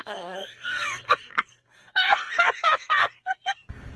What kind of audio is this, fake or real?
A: fake